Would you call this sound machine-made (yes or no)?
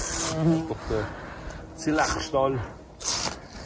no